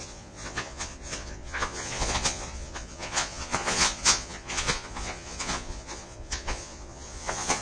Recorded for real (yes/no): no